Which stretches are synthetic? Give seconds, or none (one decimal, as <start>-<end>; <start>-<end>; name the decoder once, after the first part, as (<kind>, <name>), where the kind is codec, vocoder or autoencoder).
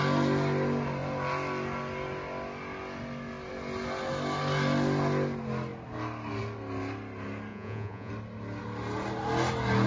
7.5-8.1 (vocoder, Vocos)